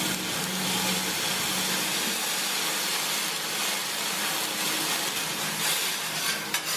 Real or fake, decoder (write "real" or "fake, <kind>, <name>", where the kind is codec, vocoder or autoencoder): real